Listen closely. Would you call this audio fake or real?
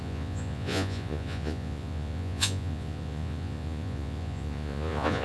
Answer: fake